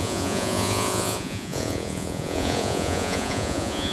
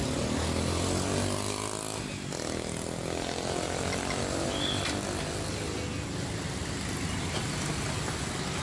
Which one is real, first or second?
second